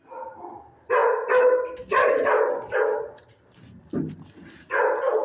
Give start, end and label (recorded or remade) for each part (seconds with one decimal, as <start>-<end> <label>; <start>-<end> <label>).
0.0-5.2 recorded